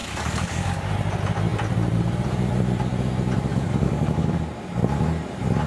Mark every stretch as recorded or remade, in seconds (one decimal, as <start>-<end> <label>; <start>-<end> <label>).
0.0-0.9 remade; 0.9-3.5 recorded; 3.5-4.4 remade; 4.4-5.7 recorded